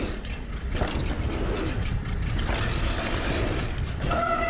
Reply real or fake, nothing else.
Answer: real